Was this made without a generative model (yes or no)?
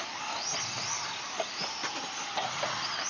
yes